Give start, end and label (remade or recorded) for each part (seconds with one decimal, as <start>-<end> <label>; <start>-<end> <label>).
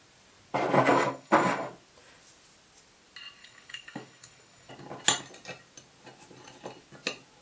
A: 0.0-0.9 recorded; 0.9-1.7 remade; 1.7-3.4 recorded; 3.4-4.7 remade; 4.7-7.4 recorded